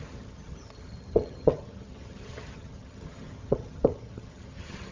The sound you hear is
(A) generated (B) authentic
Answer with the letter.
A